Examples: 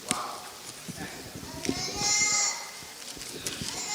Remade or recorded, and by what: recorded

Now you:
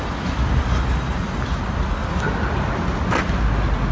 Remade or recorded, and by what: recorded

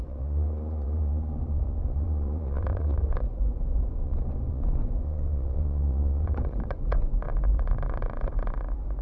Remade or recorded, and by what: remade, vocoder, Vocos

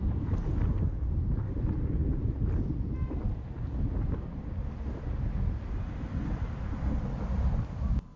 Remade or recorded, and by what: recorded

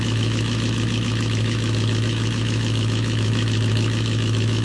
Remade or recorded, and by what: remade, autoencoder, DAC-VAE